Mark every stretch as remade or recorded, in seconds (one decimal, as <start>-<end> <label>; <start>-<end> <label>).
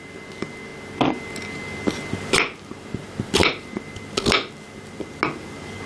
0.0-5.9 recorded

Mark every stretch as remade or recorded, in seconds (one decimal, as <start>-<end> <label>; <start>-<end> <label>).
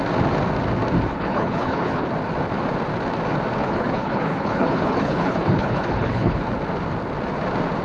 0.0-1.1 recorded; 1.1-2.1 remade; 2.1-3.6 recorded; 3.6-6.4 remade; 6.4-7.8 recorded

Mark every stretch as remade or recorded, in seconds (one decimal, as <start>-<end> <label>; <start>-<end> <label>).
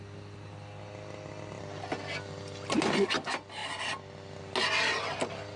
0.0-5.6 recorded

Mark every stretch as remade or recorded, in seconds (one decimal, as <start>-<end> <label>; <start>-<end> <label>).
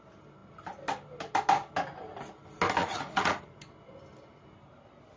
0.0-2.8 recorded; 2.8-3.4 remade; 3.4-5.2 recorded